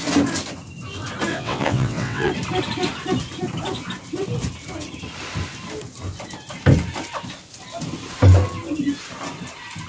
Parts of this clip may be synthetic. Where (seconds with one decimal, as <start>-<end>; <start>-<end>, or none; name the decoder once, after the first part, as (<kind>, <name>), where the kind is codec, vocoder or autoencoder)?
1.3-2.3 (vocoder, WaveNeXt)